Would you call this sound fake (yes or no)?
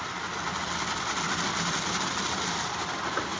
no